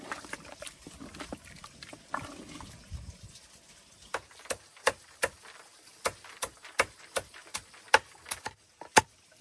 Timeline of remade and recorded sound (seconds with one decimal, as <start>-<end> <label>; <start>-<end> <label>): 0.0-9.4 recorded